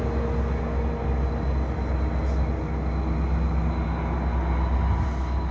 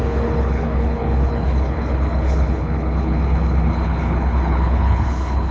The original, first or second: first